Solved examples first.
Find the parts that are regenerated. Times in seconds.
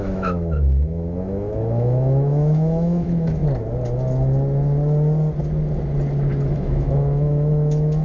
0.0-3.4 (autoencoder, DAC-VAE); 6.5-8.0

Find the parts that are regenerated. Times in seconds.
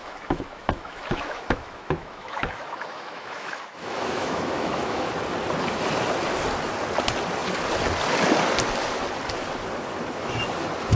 0.0-5.1 (autoencoder, DAC-VAE)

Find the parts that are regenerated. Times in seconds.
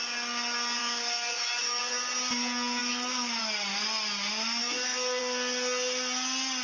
0.8-1.8 (autoencoder, DAC-VAE); 2.8-3.4; 4.6-5.2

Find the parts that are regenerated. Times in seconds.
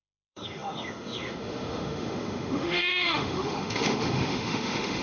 0.0-5.0 (autoencoder, DAC-VAE)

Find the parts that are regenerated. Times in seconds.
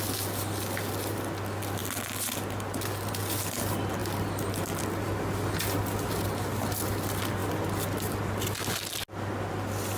none